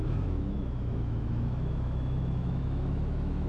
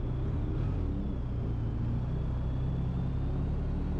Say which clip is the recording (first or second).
second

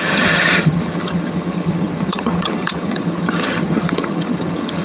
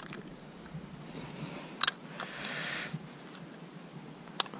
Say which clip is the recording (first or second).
second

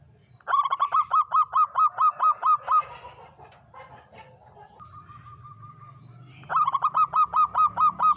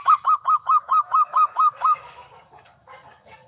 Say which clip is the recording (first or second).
first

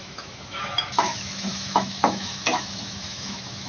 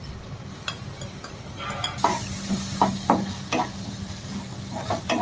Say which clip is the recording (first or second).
second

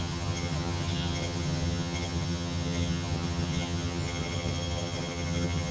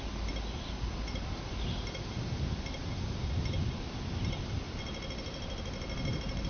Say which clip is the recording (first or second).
second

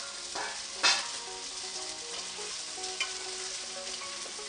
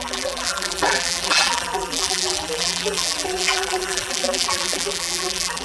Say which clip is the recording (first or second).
first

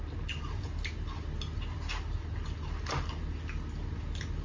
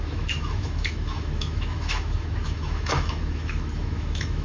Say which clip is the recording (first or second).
first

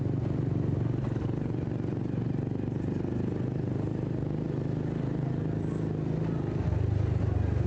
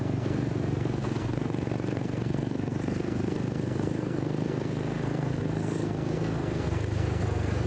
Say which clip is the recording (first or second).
first